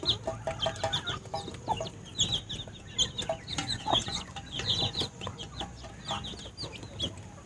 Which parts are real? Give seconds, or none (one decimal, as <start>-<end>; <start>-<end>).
0.0-3.6; 5.9-7.5